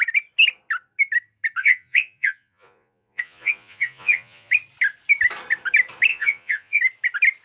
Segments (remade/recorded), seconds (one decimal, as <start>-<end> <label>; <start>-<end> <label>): 0.0-1.6 recorded; 1.6-4.5 remade; 4.5-6.1 recorded; 6.1-6.8 remade; 6.8-7.4 recorded

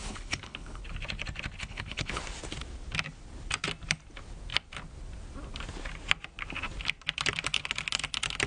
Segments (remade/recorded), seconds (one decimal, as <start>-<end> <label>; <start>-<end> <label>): 0.0-0.8 remade; 0.8-1.6 recorded; 1.6-2.2 remade; 2.2-8.5 recorded